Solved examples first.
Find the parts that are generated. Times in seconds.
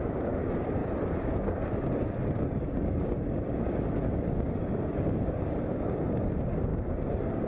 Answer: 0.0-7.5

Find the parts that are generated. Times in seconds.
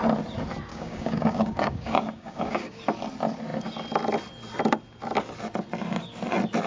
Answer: 0.7-2.8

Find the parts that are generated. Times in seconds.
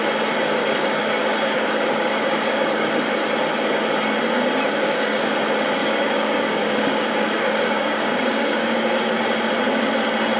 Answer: 0.6-2.9; 4.7-5.2; 5.8-9.0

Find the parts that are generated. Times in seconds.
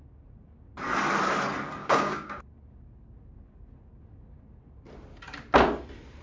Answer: 1.8-2.4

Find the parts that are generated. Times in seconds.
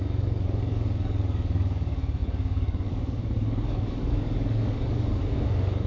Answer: 0.0-5.9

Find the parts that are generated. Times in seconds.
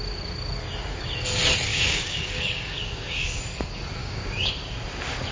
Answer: 1.7-3.4; 4.0-4.5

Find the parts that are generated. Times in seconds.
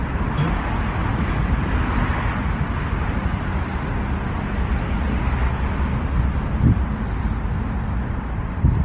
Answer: none